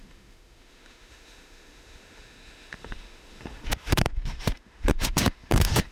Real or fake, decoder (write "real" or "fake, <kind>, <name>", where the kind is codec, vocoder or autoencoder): fake, autoencoder, DAC-VAE